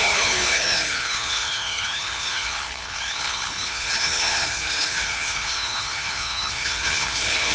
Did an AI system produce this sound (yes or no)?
yes